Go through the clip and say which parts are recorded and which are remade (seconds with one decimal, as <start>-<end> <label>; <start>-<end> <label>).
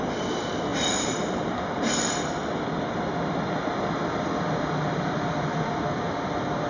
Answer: 0.0-0.7 recorded; 0.7-2.1 remade; 2.1-6.7 recorded